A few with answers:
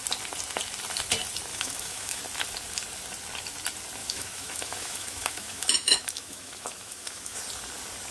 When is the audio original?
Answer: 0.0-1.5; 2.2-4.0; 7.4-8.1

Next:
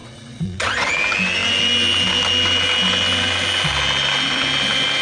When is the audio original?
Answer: 0.9-5.0

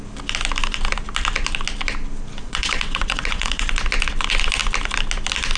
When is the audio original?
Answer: 0.0-2.4; 3.7-5.6

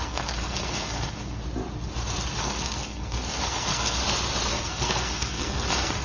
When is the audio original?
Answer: 1.4-2.4; 4.0-4.5

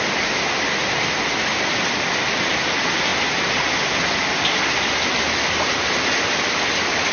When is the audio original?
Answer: 0.0-7.1